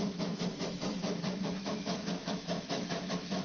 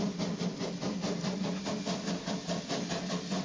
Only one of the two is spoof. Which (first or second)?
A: first